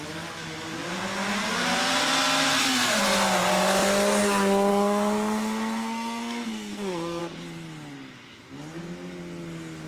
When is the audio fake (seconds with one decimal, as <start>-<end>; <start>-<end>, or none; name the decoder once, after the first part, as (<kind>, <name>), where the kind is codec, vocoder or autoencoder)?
4.7-7.2 (codec, SNAC)